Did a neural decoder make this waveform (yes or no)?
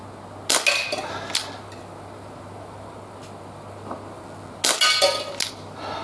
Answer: no